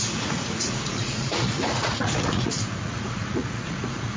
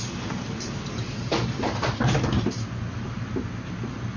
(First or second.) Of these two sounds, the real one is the second